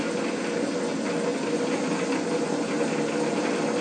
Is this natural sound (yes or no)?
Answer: yes